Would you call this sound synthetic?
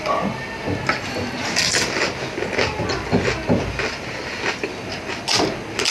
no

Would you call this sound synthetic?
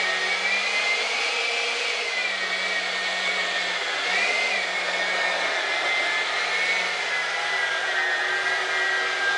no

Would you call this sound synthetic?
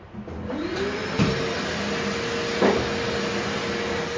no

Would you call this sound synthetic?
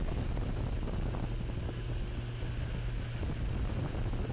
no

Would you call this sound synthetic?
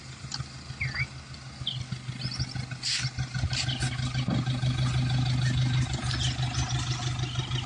no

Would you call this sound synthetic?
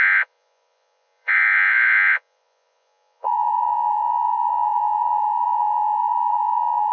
yes